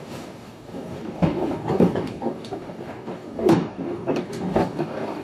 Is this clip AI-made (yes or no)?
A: yes